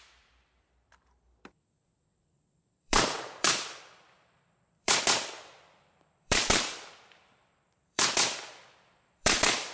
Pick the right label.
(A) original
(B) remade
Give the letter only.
B